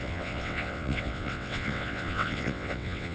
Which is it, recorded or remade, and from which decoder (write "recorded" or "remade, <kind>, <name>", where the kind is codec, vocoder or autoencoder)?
remade, vocoder, WaveNeXt